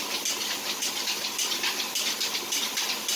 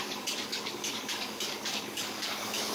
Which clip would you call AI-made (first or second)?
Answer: second